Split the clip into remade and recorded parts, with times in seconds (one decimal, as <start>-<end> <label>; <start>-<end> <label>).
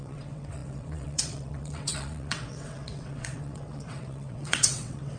0.0-5.2 remade